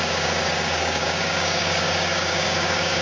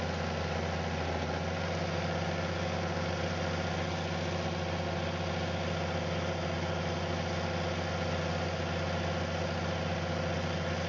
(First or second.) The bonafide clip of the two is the second